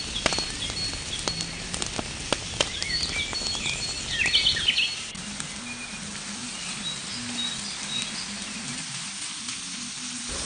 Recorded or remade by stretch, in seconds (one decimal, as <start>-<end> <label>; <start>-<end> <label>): 0.0-6.4 recorded; 6.4-9.5 remade; 9.5-10.5 recorded